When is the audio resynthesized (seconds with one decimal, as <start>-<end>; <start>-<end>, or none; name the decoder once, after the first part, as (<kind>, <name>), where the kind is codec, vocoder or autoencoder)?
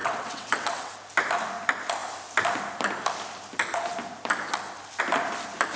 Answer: 0.0-0.9 (vocoder, WaveNeXt)